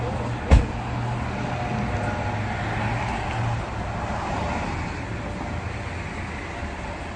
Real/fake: real